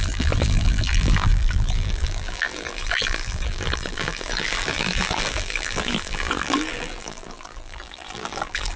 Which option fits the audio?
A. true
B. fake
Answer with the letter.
B